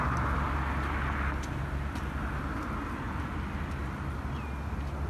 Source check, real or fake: real